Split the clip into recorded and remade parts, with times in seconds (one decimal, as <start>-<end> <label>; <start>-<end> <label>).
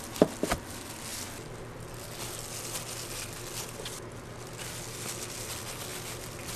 0.0-6.6 recorded